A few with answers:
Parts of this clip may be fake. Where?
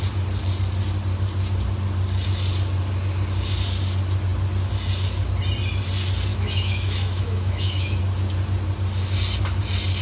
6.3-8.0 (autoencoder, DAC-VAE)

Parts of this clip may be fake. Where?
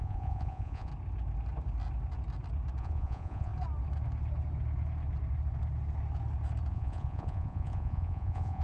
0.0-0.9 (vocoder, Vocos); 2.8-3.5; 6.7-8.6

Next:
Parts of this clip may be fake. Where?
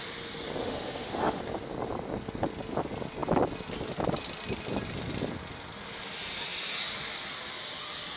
0.6-1.4 (autoencoder, DAC-VAE)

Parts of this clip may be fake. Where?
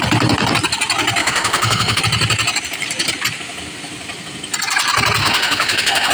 1.2-2.0 (autoencoder, DAC-VAE); 5.2-6.1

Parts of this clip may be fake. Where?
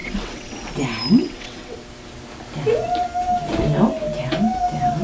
0.0-0.7 (vocoder, WaveNeXt); 1.2-1.8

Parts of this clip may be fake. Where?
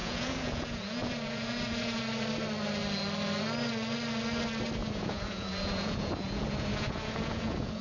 0.0-2.0 (vocoder, Vocos); 4.8-7.8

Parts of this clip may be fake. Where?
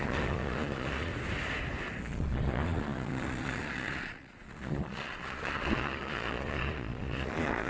0.0-1.1 (vocoder, Vocos); 2.0-7.7